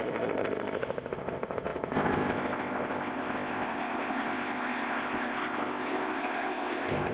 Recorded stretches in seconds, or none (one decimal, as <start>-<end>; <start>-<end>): none